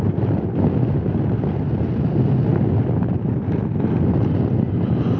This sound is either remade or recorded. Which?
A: recorded